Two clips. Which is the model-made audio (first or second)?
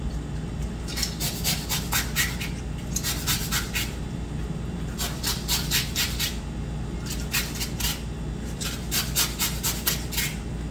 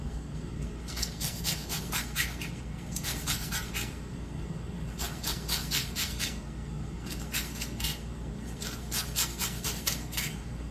second